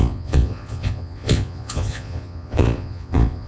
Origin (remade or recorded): remade